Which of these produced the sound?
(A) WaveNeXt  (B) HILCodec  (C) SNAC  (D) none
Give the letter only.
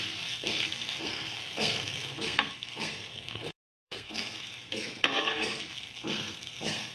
C